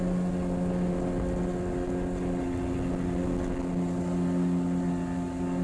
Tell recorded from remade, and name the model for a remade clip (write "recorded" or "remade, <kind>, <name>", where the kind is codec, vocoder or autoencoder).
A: recorded